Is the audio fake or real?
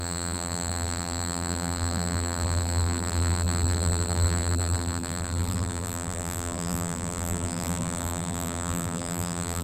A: fake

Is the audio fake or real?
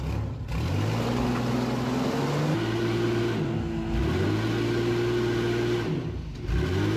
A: real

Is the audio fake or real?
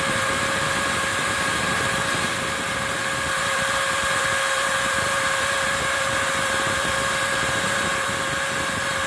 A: fake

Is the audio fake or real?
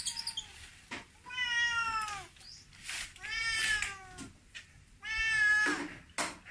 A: real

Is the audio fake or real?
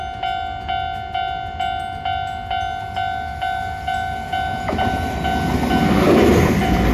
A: real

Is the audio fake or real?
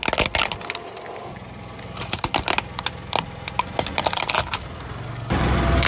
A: real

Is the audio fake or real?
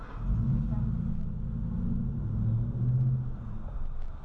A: real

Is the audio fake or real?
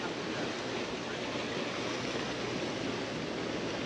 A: real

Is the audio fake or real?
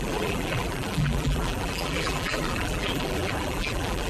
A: fake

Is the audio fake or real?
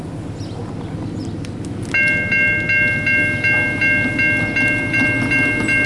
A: real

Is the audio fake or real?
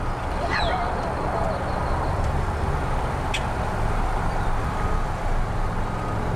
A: real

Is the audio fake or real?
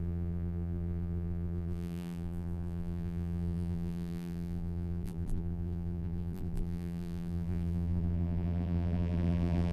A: fake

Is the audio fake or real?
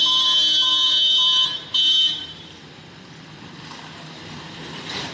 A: fake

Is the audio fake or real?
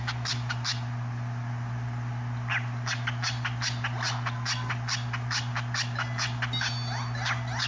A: real